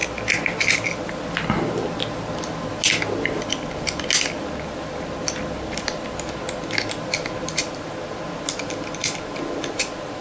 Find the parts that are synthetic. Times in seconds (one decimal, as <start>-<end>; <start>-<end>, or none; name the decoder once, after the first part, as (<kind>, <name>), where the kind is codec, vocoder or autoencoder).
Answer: none